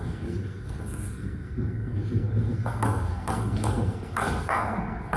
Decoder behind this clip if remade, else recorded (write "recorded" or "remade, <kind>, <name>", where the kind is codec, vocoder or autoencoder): remade, codec, SNAC